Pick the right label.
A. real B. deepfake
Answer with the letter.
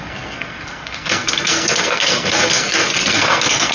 B